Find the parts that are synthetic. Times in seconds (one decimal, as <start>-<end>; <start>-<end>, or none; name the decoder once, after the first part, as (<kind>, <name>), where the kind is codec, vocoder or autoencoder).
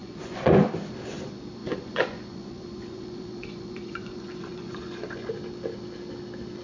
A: 0.0-0.7 (vocoder, Vocos); 1.6-5.3